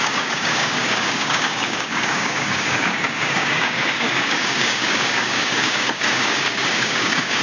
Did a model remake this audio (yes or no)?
yes